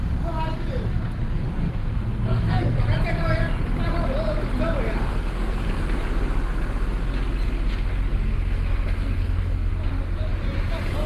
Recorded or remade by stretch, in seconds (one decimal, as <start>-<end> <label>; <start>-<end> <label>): 0.0-1.6 recorded; 1.6-2.8 remade; 2.8-5.1 recorded; 5.1-5.8 remade; 5.8-8.1 recorded; 8.1-9.7 remade; 9.7-11.1 recorded